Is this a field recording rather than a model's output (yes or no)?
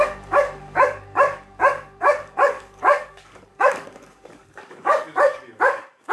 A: no